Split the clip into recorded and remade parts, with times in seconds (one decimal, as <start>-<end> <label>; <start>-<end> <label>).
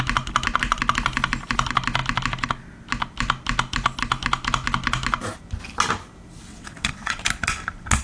0.0-6.5 recorded; 6.5-7.2 remade; 7.2-8.0 recorded